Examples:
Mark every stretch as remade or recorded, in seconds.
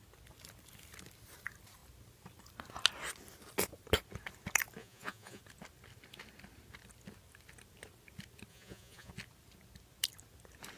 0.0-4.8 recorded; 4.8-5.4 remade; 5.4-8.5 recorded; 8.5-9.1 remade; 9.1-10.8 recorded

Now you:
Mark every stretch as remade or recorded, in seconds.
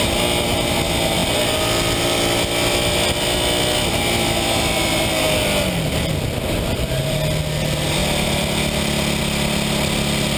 0.0-10.4 recorded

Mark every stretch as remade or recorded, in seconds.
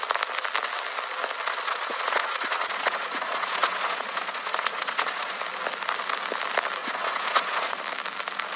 0.0-1.4 recorded; 1.4-5.4 remade; 5.4-6.8 recorded; 6.8-7.8 remade; 7.8-8.6 recorded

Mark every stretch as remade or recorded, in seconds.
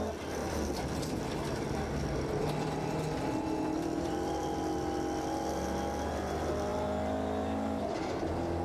0.0-8.6 recorded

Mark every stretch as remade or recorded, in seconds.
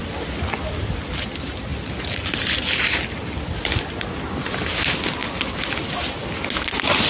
0.0-7.1 recorded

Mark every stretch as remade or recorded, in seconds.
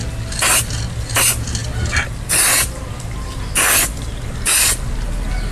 0.0-5.5 recorded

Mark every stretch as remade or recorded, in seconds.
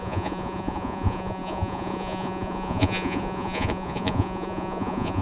0.0-5.2 remade